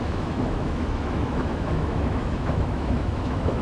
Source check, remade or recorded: remade